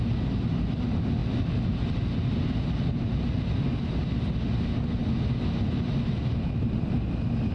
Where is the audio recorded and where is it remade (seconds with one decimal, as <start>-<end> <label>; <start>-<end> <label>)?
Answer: 0.0-7.5 recorded